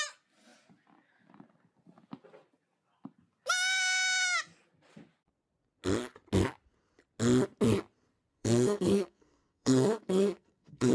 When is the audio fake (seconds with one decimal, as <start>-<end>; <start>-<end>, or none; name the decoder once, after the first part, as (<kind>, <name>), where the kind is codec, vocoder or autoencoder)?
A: 8.3-10.9 (codec, SNAC)